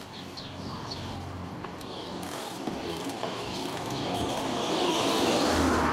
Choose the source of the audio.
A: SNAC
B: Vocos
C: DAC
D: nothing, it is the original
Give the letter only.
C